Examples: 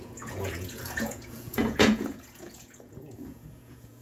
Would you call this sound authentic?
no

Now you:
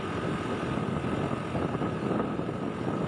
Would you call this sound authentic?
yes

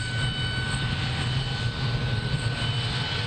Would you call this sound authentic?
yes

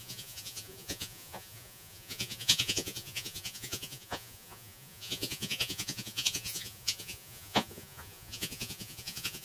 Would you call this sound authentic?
no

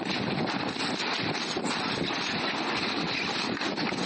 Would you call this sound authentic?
yes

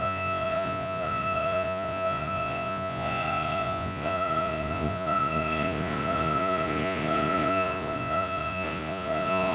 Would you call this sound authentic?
no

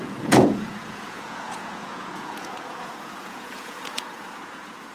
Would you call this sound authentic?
no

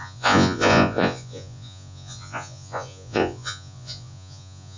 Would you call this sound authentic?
no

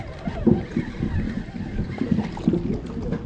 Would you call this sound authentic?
yes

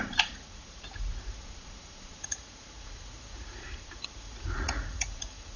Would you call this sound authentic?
no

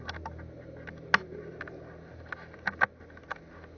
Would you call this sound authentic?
yes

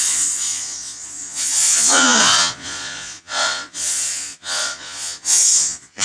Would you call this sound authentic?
no